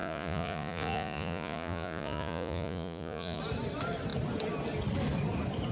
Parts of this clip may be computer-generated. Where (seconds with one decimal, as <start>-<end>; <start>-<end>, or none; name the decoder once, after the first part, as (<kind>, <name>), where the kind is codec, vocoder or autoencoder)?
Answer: 0.0-3.4 (vocoder, Vocos)